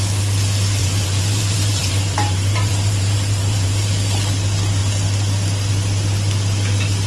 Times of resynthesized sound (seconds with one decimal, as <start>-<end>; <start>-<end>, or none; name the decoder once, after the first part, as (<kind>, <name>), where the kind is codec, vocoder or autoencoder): 0.8-3.9 (vocoder, BigVGAN v2)